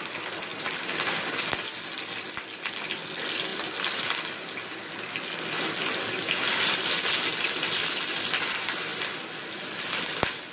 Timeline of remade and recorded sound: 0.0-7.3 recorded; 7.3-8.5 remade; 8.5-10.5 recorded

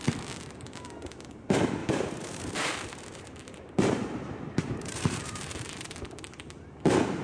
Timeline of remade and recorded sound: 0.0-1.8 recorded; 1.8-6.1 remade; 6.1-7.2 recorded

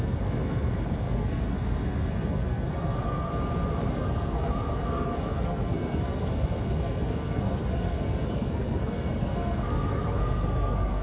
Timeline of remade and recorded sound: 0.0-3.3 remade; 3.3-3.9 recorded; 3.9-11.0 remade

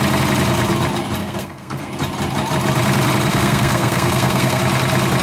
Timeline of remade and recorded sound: 0.0-1.2 recorded; 1.2-1.9 remade; 1.9-3.3 recorded; 3.3-4.6 remade; 4.6-5.2 recorded